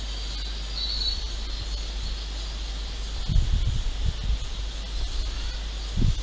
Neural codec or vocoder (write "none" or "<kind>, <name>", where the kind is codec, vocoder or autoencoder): none